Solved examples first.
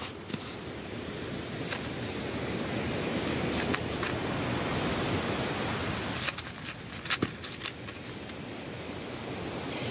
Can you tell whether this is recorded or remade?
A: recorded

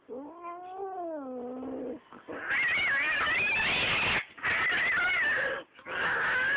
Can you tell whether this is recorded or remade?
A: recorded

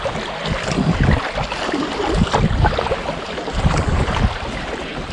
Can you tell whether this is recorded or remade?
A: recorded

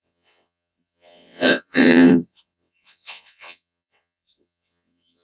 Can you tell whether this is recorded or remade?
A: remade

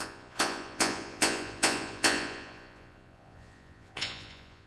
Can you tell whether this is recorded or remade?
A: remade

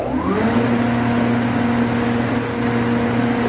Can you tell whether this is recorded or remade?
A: recorded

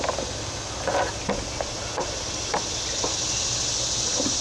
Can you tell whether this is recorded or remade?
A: recorded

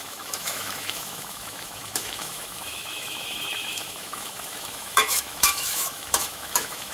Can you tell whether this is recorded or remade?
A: remade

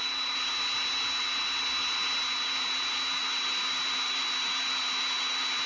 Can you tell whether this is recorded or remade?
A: recorded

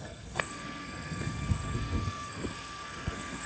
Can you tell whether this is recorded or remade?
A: remade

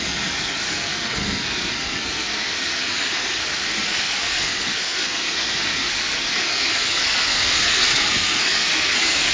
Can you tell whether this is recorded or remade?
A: remade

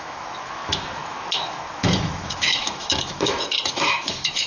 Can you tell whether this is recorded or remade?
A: remade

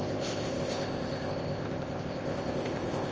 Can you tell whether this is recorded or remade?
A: remade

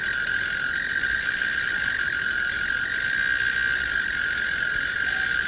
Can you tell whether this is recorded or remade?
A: recorded